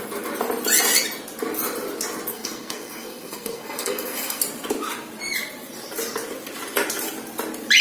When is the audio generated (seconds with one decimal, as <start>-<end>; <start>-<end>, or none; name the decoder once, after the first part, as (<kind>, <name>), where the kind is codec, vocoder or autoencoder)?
2.3-4.4 (codec, SNAC)